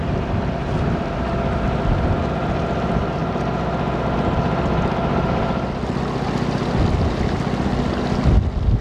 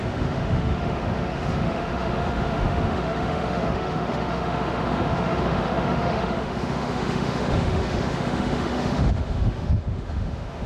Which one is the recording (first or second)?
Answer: first